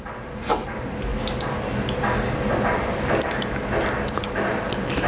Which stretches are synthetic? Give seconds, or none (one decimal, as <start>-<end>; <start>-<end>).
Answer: 0.0-1.1; 4.2-5.1